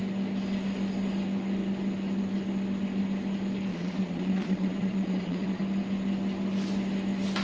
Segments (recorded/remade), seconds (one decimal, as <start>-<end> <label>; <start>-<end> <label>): 0.0-3.7 recorded; 3.7-5.6 remade; 5.6-7.4 recorded